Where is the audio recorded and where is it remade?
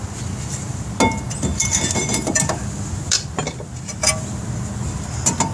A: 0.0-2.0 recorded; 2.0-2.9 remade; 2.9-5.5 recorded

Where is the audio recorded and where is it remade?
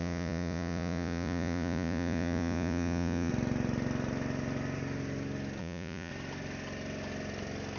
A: 0.0-3.3 remade; 3.3-5.6 recorded; 5.6-6.1 remade; 6.1-7.8 recorded